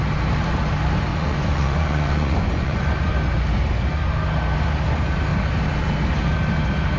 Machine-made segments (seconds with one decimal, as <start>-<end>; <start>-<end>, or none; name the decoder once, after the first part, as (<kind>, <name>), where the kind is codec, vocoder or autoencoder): 1.1-2.9 (vocoder, Vocos)